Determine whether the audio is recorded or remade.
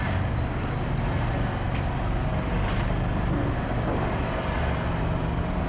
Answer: recorded